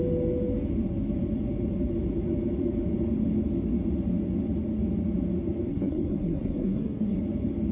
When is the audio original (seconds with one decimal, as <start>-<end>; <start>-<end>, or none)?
0.0-5.7; 7.2-7.7